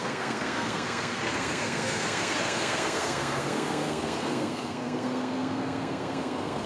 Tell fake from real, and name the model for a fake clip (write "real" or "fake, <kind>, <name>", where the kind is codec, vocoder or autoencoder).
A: fake, codec, SNAC